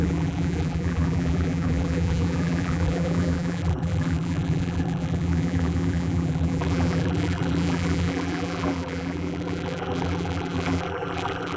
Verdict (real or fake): fake